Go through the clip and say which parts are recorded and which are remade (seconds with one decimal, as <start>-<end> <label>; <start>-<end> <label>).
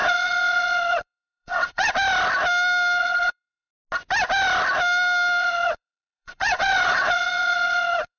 0.0-1.9 remade; 1.9-3.0 recorded; 3.0-3.7 remade; 3.7-5.4 recorded; 5.4-8.2 remade